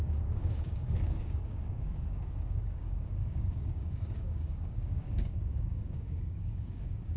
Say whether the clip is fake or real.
fake